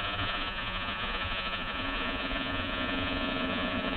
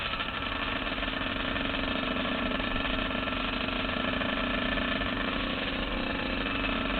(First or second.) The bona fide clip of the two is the second